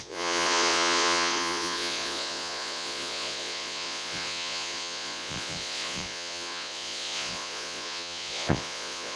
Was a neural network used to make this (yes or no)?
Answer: yes